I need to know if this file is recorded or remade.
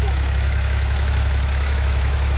remade